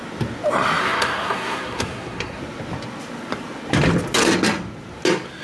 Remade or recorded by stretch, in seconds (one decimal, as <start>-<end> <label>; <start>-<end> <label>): 0.0-0.8 recorded; 0.8-2.4 remade; 2.4-5.4 recorded